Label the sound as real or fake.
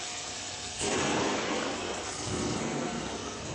fake